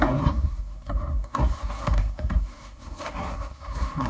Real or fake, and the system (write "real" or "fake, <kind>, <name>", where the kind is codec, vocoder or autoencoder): fake, codec, SNAC